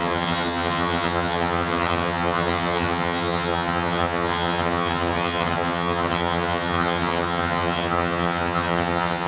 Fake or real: fake